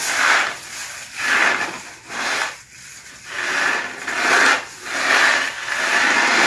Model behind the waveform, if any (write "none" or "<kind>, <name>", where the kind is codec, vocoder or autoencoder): none